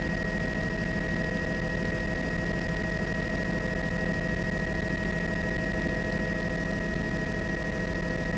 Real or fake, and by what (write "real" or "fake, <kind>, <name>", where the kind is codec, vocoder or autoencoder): real